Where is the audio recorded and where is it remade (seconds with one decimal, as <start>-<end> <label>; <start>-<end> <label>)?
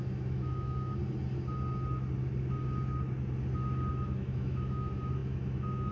0.0-1.0 remade; 1.0-3.9 recorded; 3.9-5.9 remade